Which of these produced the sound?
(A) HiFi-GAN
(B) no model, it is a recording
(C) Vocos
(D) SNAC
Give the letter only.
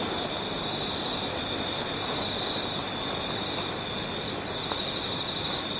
B